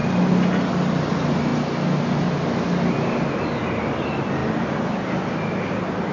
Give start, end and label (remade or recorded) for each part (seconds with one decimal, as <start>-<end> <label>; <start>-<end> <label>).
0.0-6.1 recorded